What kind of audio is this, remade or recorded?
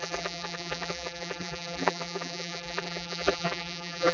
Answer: remade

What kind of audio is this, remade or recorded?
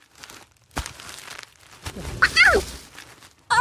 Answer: recorded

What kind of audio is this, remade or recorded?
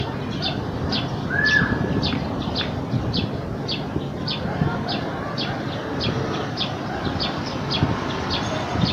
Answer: recorded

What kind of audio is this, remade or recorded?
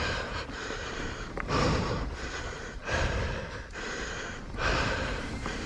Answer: remade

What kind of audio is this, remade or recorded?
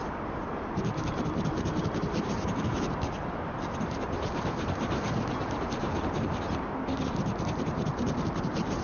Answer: remade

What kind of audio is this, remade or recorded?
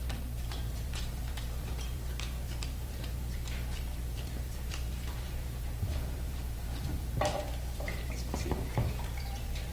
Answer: remade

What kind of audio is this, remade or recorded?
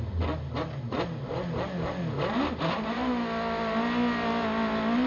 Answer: recorded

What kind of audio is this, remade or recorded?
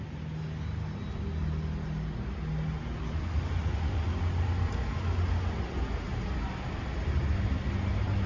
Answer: recorded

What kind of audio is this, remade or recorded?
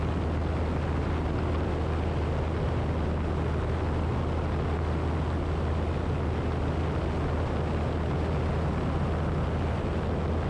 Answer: recorded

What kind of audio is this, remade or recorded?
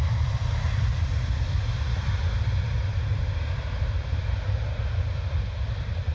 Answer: recorded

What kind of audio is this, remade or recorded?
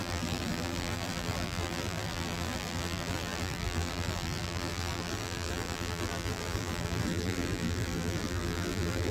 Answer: remade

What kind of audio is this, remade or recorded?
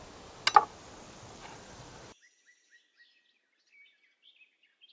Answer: recorded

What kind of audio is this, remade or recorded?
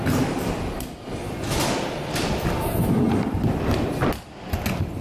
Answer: recorded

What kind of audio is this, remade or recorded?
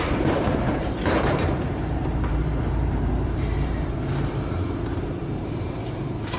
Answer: remade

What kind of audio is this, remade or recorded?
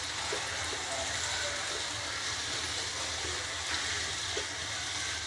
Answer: recorded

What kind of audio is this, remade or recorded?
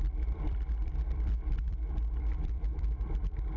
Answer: remade